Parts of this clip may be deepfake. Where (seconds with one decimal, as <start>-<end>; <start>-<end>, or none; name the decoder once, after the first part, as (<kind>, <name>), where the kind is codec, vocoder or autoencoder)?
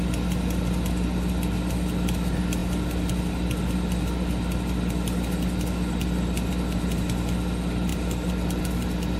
none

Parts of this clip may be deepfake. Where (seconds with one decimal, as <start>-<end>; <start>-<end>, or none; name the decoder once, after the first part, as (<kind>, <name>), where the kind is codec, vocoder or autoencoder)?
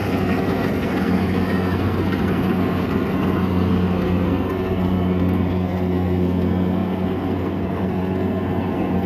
0.0-9.1 (codec, SNAC)